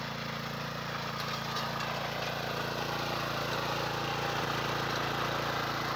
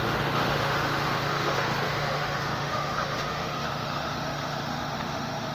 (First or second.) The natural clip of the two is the first